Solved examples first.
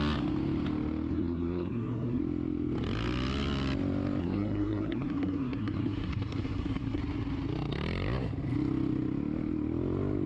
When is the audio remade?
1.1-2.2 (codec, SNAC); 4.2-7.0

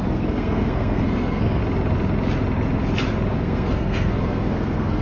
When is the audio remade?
0.0-1.6 (codec, SNAC); 3.3-5.0

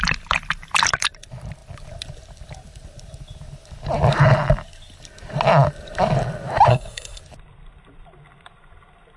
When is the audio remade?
6.7-7.2 (codec, SNAC)